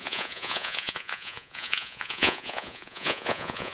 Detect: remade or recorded remade